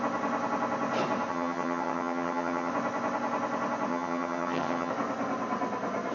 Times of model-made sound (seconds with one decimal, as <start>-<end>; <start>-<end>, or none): 1.3-2.7; 3.9-4.9